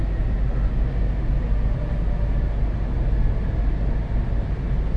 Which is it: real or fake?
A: real